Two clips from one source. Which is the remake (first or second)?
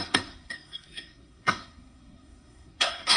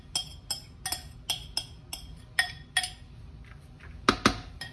first